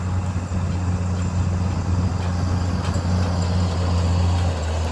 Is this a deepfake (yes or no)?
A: no